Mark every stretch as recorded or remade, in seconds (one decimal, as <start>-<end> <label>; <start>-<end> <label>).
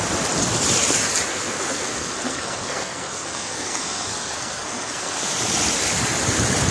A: 0.0-1.3 recorded; 1.3-5.3 remade; 5.3-6.7 recorded